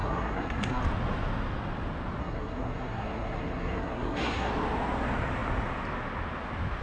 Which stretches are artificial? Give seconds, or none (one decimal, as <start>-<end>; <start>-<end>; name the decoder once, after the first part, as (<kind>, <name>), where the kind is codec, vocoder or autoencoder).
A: 0.0-0.8 (codec, SNAC); 2.2-4.5

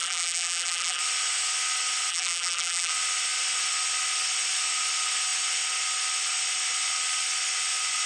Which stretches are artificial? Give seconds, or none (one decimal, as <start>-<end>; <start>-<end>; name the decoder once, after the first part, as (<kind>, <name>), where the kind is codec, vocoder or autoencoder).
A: 0.0-1.0 (vocoder, BigVGAN v2); 2.1-2.9

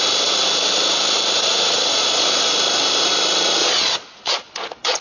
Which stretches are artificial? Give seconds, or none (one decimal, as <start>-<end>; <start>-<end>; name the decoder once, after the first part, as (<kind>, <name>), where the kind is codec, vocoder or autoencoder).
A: 1.9-2.4 (vocoder, Vocos); 3.6-5.0

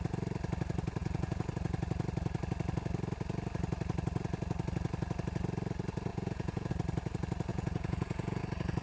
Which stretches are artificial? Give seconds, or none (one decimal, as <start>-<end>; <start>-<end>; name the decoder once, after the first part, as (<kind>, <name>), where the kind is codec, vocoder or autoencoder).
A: 1.0-1.5 (vocoder, Vocos); 6.1-6.7; 7.5-8.4

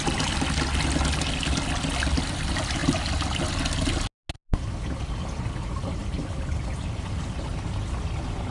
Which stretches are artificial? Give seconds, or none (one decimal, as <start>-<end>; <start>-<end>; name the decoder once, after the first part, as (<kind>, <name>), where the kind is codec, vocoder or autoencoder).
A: none

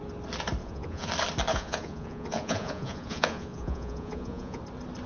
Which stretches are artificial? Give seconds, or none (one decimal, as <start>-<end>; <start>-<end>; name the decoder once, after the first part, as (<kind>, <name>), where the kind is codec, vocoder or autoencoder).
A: 0.6-1.1 (vocoder, Vocos); 1.5-4.6

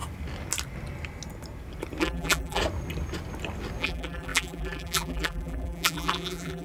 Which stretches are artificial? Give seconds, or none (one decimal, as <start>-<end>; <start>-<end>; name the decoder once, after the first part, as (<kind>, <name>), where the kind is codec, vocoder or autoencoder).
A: 2.0-2.6 (vocoder, BigVGAN v2); 3.8-6.6

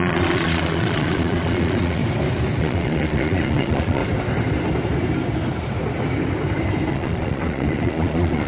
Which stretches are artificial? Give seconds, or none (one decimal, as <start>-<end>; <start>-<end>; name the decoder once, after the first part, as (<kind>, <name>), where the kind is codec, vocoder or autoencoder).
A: 0.0-2.0 (vocoder, Vocos); 2.6-4.0; 6.9-8.5